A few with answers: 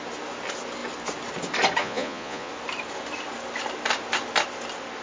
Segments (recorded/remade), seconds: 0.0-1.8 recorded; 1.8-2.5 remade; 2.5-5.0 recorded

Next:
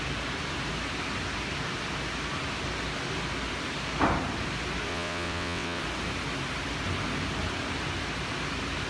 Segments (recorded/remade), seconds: 0.0-4.9 recorded; 4.9-5.8 remade; 5.8-8.9 recorded